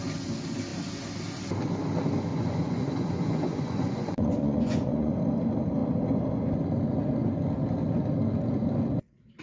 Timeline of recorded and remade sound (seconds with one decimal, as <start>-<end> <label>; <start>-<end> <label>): 0.0-2.3 recorded; 2.3-5.1 remade; 5.1-9.4 recorded